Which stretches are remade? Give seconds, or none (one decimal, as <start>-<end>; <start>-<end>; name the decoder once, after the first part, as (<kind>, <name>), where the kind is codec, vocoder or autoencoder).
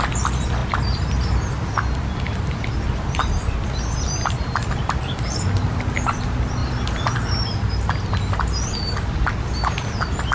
none